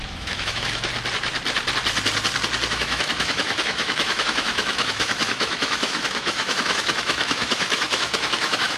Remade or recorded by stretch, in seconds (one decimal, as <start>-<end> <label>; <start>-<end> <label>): 0.0-0.9 remade; 0.9-2.7 recorded; 2.7-8.8 remade